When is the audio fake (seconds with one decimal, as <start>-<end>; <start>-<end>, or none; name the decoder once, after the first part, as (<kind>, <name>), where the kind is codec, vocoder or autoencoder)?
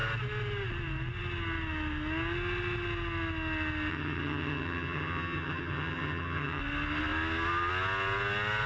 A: 3.9-6.6 (vocoder, HiFi-GAN)